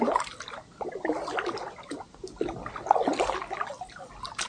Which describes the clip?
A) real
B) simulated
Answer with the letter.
A